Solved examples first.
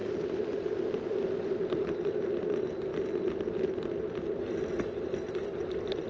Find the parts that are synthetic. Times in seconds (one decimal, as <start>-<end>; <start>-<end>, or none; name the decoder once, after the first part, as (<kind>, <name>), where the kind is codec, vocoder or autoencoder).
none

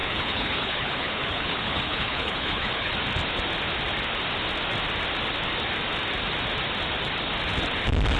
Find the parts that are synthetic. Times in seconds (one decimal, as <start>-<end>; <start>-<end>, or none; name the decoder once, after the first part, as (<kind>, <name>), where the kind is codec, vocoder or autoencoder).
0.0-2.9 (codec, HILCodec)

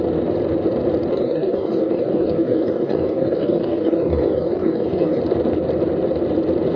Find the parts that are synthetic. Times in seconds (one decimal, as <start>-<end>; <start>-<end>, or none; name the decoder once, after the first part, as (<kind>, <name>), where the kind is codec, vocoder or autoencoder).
1.1-5.2 (codec, DAC)

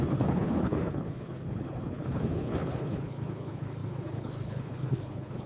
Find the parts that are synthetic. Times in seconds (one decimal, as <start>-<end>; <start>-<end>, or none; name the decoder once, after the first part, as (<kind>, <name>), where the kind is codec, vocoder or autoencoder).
0.0-5.5 (codec, HILCodec)